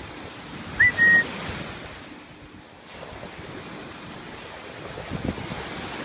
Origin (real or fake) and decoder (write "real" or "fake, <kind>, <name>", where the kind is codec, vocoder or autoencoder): real